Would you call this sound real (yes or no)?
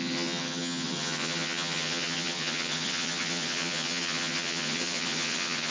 no